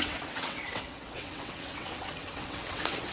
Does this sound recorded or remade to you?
remade